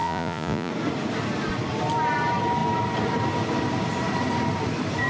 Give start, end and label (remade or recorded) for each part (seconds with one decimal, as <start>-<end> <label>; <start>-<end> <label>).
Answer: 0.0-0.7 remade; 0.7-5.1 recorded